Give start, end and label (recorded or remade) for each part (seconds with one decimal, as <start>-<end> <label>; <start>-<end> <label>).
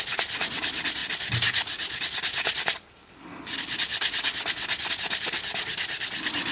0.0-6.5 recorded